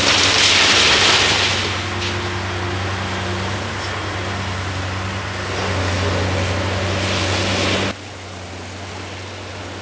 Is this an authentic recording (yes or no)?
yes